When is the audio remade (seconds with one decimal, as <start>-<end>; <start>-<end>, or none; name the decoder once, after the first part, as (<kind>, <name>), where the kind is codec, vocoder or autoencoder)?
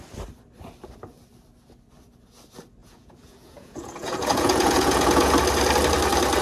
2.8-5.3 (vocoder, Vocos)